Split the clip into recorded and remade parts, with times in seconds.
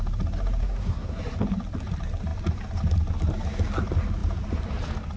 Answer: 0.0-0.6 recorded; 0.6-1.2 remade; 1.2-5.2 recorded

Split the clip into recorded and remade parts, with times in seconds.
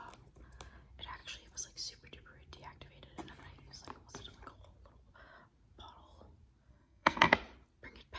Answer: 0.0-6.7 recorded; 6.7-7.3 remade; 7.3-8.2 recorded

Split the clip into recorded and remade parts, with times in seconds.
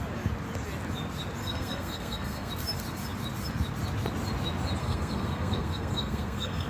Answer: 0.0-1.4 recorded; 1.4-2.5 remade; 2.5-4.8 recorded; 4.8-6.7 remade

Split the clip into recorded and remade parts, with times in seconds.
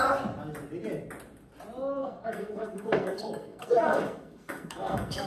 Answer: 0.0-2.0 recorded; 2.0-5.3 remade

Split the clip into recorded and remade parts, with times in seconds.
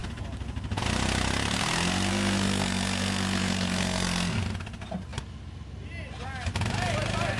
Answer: 0.0-2.1 recorded; 2.1-4.4 remade; 4.4-7.4 recorded